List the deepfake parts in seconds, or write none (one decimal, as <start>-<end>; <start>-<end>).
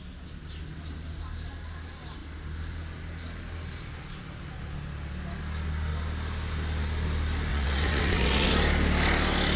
7.5-8.5